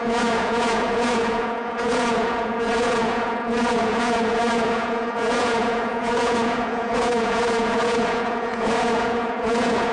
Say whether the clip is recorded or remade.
remade